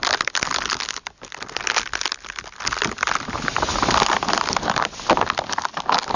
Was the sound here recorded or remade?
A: recorded